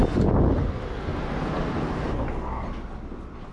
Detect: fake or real real